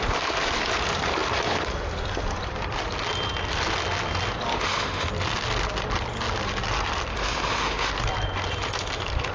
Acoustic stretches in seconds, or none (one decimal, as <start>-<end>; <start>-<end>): 0.0-4.5; 5.1-7.1; 7.9-9.3